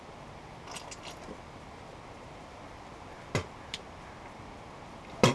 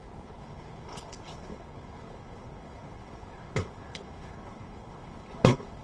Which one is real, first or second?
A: first